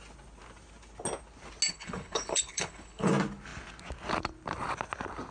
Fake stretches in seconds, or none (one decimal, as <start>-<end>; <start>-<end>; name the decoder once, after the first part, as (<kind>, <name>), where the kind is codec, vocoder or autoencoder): 1.7-3.1 (codec, HILCodec)